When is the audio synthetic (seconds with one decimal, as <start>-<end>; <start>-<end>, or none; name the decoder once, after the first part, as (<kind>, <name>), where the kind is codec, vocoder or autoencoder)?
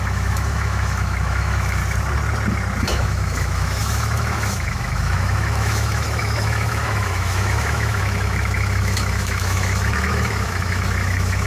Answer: 0.0-1.8 (autoencoder, DAC-VAE); 2.8-11.5